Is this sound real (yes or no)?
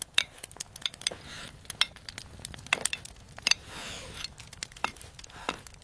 yes